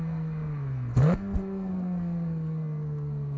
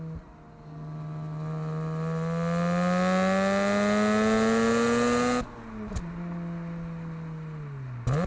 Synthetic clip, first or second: first